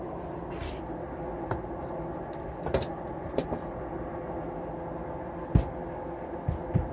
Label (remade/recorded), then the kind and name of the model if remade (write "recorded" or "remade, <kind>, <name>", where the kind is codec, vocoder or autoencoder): recorded